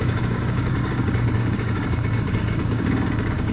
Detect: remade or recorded remade